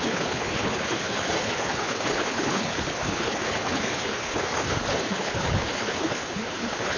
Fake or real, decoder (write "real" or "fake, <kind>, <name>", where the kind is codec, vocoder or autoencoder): fake, codec, HILCodec